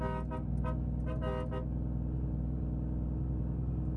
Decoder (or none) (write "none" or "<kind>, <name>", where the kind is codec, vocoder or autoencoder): none